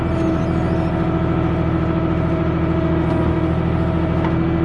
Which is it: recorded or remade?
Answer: recorded